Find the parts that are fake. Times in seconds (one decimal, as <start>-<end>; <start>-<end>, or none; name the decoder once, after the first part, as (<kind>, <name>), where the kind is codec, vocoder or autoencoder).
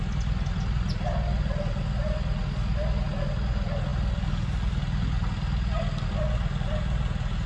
none